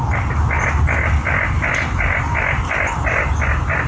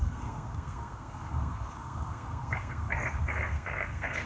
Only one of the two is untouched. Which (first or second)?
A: first